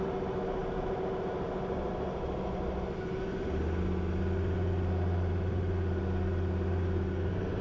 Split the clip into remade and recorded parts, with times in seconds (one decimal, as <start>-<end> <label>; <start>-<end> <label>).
0.0-7.6 recorded